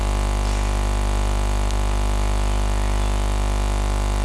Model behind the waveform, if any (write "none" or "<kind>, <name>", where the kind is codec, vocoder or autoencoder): none